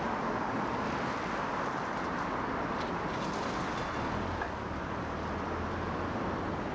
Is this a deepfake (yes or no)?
no